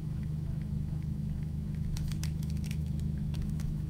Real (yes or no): no